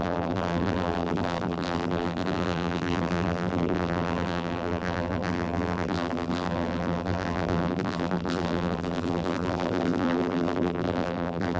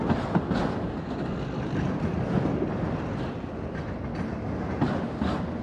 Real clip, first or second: second